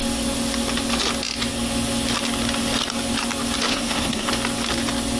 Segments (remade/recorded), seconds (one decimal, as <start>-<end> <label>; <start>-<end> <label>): 0.0-3.7 recorded; 3.7-4.3 remade; 4.3-5.2 recorded